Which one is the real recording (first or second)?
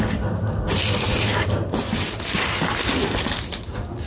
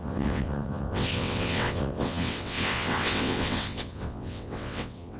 first